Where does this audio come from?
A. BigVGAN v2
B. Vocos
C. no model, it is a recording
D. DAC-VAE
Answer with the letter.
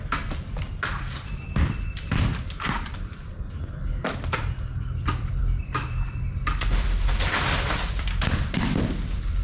A